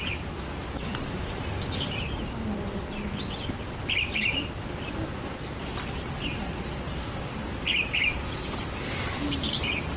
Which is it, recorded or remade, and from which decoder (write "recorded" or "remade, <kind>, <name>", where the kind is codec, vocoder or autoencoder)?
recorded